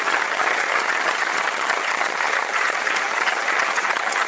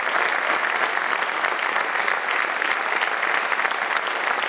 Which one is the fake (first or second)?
first